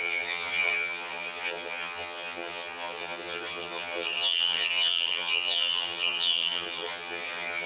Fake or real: fake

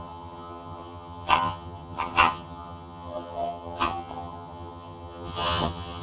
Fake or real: fake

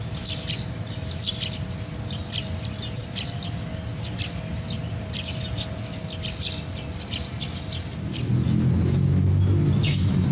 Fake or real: real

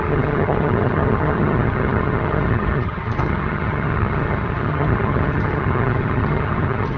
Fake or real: fake